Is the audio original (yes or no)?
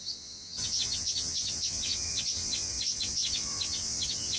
no